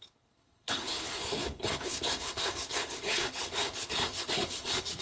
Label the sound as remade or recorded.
remade